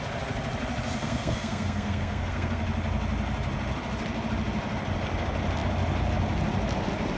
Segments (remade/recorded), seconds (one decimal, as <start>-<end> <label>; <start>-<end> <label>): 0.0-1.0 recorded; 1.0-2.6 remade; 2.6-7.2 recorded